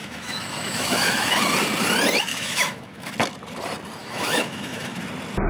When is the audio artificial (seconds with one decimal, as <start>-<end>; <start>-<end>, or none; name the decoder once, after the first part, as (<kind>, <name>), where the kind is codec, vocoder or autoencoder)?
0.0-1.4 (autoencoder, DAC-VAE); 2.3-3.1; 4.0-5.0